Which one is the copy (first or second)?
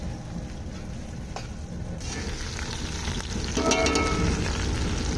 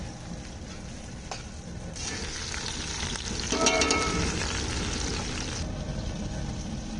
second